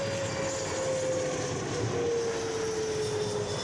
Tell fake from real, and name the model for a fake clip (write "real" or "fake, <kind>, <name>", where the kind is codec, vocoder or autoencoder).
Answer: real